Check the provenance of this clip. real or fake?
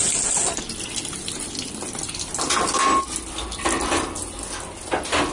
real